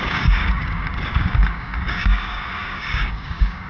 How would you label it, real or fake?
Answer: fake